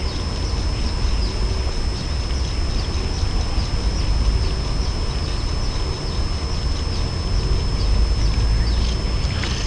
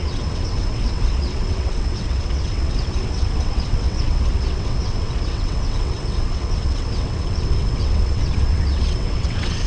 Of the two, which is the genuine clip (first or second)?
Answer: first